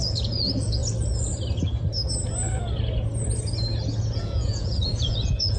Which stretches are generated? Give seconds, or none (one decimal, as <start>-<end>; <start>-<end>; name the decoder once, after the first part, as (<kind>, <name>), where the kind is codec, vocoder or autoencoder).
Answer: 0.0-0.8 (vocoder, Vocos); 4.2-5.6